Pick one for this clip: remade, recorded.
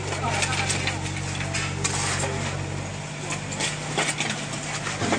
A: recorded